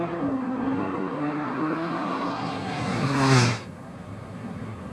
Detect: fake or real fake